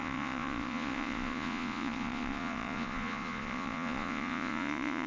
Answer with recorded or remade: remade